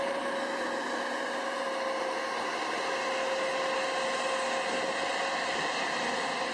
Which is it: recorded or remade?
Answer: recorded